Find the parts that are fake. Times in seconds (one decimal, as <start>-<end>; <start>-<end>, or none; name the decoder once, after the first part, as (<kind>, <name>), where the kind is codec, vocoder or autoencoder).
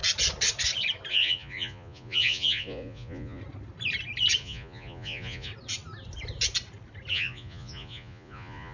1.1-3.4 (vocoder, Vocos); 4.4-5.5; 7.1-8.7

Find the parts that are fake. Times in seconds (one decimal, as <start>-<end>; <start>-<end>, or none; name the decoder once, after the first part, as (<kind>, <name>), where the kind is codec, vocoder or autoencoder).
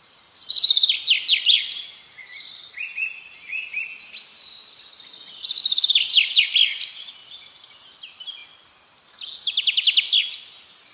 2.2-3.7 (vocoder, BigVGAN v2); 5.6-7.1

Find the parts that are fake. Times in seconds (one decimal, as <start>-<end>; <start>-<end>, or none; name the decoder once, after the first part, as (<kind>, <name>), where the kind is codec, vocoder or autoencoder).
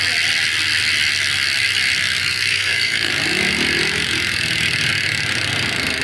2.2-3.1 (codec, SNAC)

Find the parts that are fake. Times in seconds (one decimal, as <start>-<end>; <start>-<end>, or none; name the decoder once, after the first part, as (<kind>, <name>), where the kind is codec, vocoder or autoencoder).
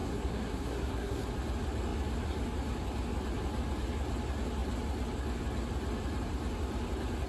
0.0-1.3 (codec, SNAC)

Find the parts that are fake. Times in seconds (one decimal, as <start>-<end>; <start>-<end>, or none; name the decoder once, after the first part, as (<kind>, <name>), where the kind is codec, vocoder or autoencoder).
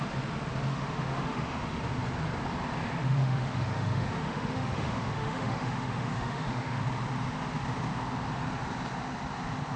0.7-1.8 (autoencoder, DAC-VAE); 3.0-6.8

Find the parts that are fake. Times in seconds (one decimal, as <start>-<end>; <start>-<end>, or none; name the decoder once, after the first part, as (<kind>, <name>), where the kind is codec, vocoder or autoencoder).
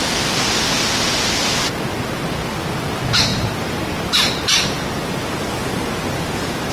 none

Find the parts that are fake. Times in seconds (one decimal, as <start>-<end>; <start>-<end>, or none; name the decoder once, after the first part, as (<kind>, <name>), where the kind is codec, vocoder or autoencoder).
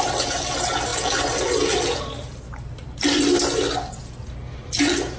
none